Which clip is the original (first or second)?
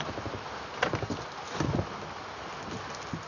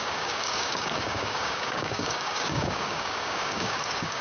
first